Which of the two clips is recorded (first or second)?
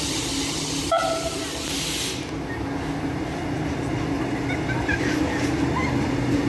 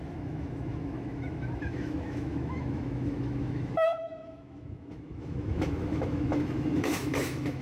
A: first